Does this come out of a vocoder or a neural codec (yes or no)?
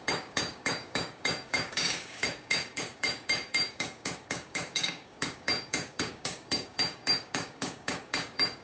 yes